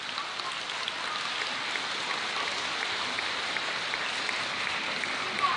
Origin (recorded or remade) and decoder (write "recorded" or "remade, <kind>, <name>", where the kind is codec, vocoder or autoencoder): recorded